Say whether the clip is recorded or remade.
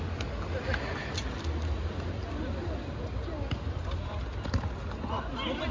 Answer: recorded